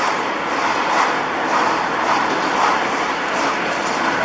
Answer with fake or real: real